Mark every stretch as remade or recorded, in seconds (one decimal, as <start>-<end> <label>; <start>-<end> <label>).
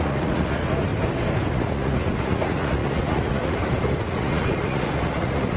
0.0-0.9 remade; 0.9-1.5 recorded; 1.5-5.6 remade